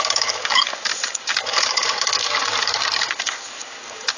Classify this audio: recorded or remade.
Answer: remade